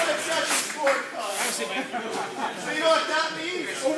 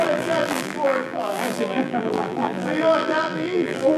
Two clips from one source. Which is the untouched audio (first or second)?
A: first